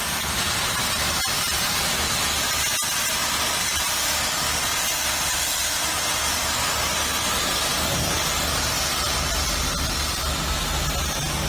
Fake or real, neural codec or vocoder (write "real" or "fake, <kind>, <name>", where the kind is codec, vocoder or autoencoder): real